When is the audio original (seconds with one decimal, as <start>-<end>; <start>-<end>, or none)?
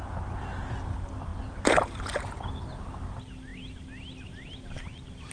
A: 0.0-5.3